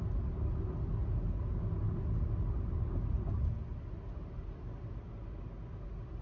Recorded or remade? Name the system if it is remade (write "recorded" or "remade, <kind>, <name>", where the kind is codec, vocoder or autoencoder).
recorded